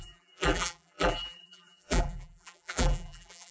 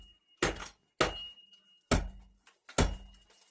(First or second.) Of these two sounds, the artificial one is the first